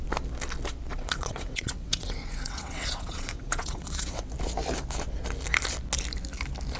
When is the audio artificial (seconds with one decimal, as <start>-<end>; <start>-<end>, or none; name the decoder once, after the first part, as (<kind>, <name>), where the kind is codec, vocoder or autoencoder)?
0.9-4.2 (vocoder, WaveNeXt)